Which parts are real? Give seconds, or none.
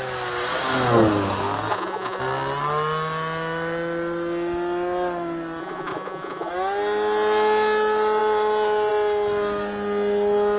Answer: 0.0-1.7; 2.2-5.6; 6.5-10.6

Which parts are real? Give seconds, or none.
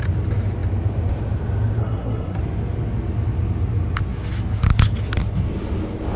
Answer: 0.0-1.8; 2.4-6.2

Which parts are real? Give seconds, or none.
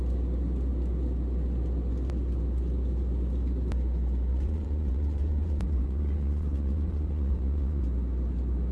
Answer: 0.0-4.3; 7.8-8.7